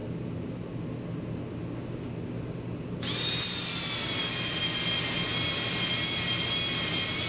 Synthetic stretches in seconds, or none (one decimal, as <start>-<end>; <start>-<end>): none